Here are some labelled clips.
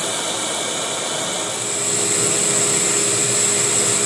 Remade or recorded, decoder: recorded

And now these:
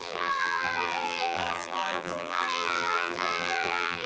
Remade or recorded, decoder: remade, vocoder, BigVGAN v2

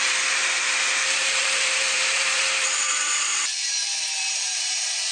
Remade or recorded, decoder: remade, vocoder, BigVGAN v2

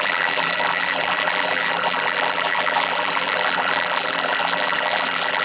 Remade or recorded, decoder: remade, vocoder, BigVGAN v2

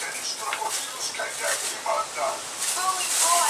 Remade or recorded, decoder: recorded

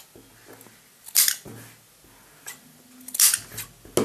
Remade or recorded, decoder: recorded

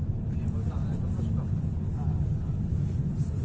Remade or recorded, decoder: recorded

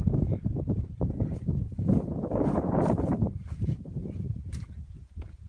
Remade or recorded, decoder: remade, vocoder, BigVGAN v2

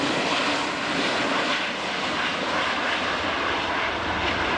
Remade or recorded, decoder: recorded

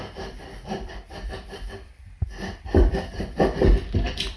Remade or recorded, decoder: remade, vocoder, BigVGAN v2